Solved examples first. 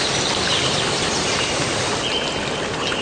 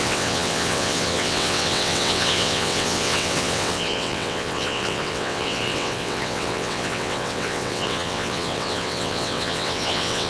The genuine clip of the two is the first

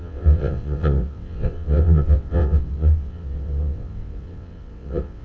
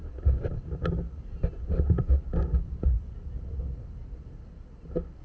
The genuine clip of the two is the second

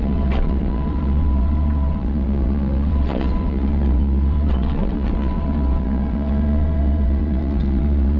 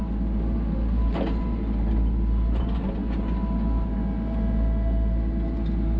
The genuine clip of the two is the second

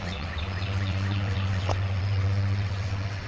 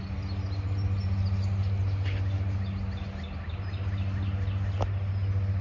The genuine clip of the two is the second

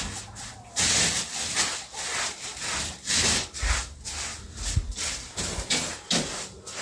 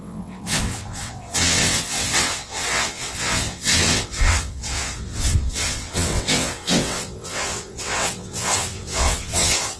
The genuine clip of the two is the first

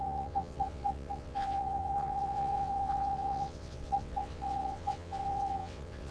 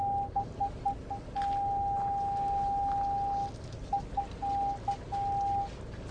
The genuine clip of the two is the second